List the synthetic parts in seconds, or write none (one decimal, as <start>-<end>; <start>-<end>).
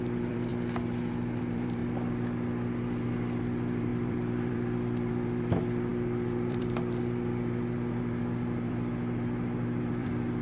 0.0-0.5; 1.4-1.8; 3.4-10.4